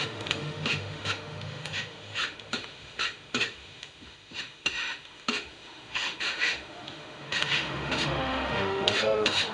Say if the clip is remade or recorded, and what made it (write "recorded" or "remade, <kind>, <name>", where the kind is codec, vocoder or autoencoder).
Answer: remade, autoencoder, DAC-VAE